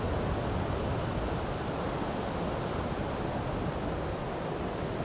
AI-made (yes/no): no